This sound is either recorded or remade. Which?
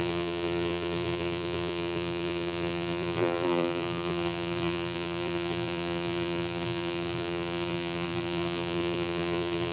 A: remade